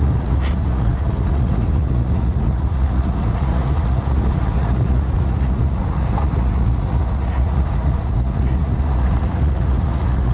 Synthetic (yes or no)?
yes